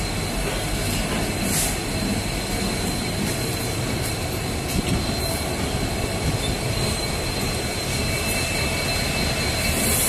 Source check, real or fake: real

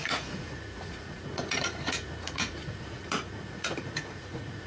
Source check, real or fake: fake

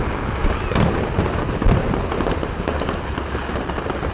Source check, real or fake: real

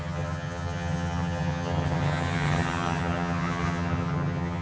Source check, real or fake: fake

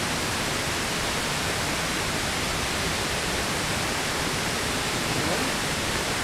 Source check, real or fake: fake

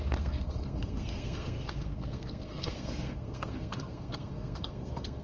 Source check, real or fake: fake